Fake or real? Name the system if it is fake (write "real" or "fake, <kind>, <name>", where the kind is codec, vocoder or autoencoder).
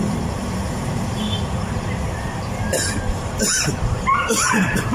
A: fake, vocoder, BigVGAN v2